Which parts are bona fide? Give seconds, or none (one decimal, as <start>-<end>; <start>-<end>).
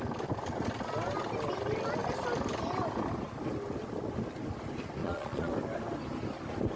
0.0-5.0; 5.5-6.8